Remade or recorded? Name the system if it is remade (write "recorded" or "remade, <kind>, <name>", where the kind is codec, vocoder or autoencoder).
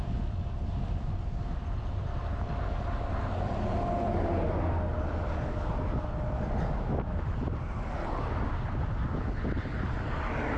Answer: recorded